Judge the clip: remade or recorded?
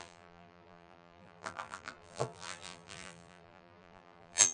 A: remade